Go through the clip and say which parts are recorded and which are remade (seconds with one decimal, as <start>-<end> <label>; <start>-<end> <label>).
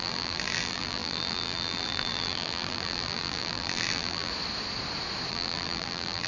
0.0-4.3 remade; 4.3-5.3 recorded; 5.3-6.3 remade